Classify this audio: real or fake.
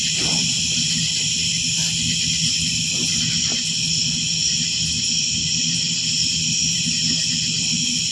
fake